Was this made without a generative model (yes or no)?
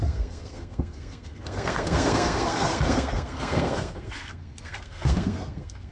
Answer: no